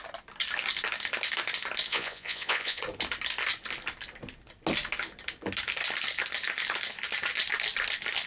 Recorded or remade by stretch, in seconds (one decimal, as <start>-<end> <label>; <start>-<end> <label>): 0.0-1.9 recorded; 1.9-2.8 remade; 2.8-8.3 recorded